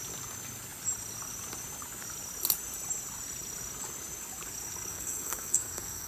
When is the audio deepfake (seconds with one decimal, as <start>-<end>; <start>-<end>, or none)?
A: 4.9-6.1